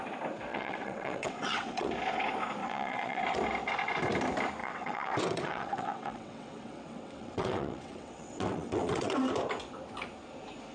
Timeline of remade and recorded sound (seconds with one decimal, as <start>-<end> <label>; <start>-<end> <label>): 0.0-0.5 recorded; 0.5-1.9 remade; 1.9-2.6 recorded; 2.6-3.2 remade; 3.2-4.6 recorded; 4.6-9.2 remade; 9.2-10.7 recorded